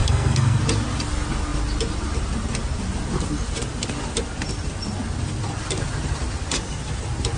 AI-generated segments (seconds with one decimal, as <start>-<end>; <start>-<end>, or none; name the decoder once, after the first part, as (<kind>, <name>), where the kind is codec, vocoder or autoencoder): 0.0-0.6 (codec, SNAC)